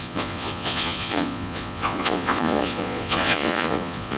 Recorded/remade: remade